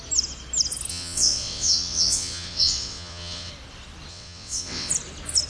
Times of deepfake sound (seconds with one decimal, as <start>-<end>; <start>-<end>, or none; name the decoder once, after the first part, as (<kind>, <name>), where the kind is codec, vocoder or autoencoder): 0.9-3.5 (vocoder, WaveNeXt); 4.1-4.9